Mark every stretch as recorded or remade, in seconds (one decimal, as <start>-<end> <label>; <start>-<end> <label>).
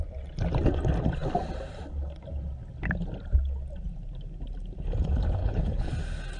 0.0-5.4 recorded; 5.4-5.9 remade; 5.9-6.4 recorded